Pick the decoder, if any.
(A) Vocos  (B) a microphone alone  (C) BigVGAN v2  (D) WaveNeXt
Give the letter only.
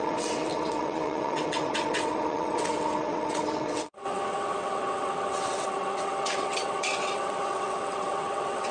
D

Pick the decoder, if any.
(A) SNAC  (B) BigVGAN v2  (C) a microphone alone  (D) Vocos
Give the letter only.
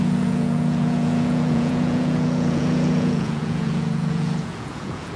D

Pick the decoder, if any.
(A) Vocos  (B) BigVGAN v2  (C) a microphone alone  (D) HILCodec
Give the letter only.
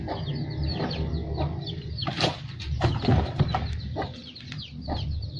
C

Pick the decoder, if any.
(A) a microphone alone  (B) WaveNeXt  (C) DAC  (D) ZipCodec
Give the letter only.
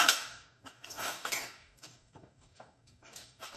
C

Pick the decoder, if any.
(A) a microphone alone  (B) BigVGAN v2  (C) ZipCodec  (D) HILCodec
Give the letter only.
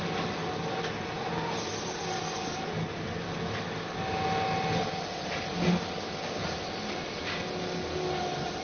A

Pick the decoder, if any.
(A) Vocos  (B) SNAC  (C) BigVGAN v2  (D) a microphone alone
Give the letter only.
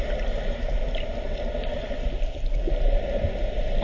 D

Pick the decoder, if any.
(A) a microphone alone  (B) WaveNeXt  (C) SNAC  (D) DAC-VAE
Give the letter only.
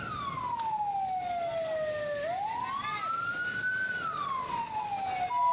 A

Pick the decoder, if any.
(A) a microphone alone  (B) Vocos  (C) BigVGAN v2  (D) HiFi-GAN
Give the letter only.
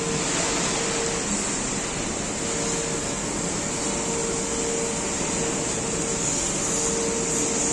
A